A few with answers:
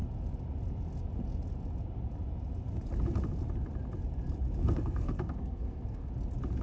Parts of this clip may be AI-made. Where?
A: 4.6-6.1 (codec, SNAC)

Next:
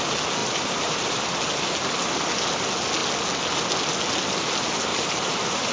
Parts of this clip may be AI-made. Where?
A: 0.4-1.2 (vocoder, BigVGAN v2); 4.9-5.7